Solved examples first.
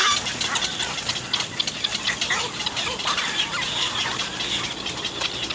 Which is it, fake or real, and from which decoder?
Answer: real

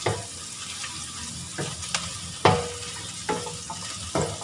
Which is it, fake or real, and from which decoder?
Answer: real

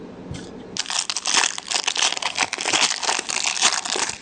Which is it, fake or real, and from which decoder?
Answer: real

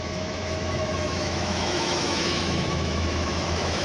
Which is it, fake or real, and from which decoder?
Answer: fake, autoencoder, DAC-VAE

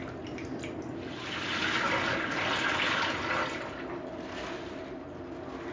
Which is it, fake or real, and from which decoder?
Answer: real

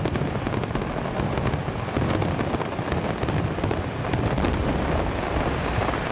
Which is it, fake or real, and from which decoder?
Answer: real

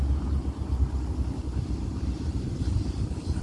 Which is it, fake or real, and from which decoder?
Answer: real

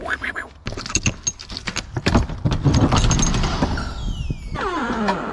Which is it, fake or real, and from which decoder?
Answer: real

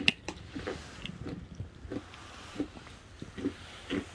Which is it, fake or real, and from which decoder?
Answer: real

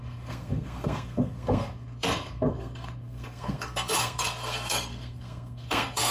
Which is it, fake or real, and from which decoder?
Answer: fake, codec, SNAC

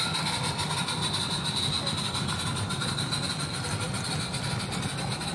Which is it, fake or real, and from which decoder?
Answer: real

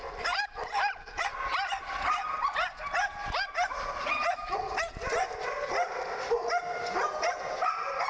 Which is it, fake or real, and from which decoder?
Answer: real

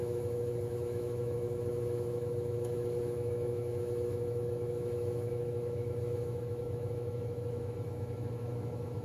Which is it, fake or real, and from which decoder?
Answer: fake, autoencoder, DAC-VAE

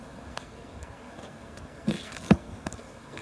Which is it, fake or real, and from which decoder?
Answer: fake, codec, SNAC